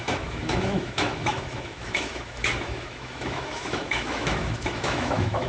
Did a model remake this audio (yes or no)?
yes